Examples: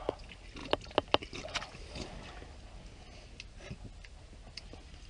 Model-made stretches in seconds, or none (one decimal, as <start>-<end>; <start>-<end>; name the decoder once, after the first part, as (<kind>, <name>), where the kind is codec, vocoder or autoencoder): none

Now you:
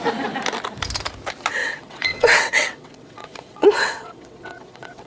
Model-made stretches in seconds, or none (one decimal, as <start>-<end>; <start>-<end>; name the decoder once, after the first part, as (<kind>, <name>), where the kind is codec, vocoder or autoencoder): 1.6-5.1 (vocoder, WaveNeXt)

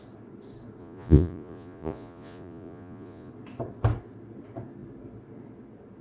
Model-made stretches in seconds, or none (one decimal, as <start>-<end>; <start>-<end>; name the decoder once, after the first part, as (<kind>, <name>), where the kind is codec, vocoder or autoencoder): 0.8-3.3 (vocoder, Vocos)